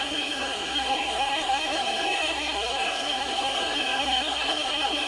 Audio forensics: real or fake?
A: fake